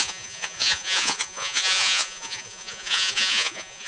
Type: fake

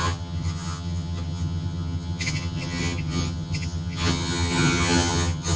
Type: fake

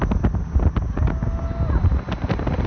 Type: real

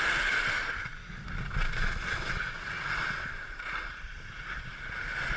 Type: real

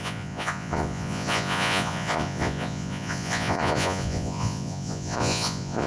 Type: fake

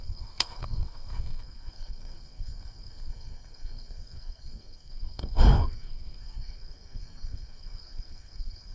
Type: fake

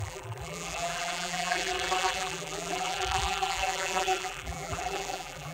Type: fake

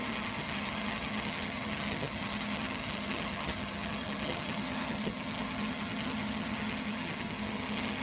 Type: fake